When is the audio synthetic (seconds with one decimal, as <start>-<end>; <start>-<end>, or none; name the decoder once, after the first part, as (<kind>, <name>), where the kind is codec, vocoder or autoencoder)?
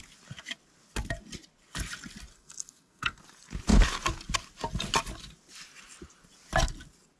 2.3-3.2 (codec, SNAC)